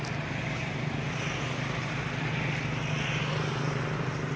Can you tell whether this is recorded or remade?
recorded